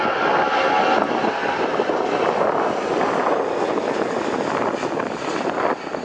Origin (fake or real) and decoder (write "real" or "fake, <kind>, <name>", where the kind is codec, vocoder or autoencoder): real